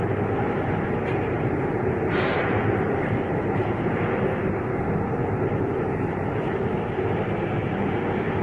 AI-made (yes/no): no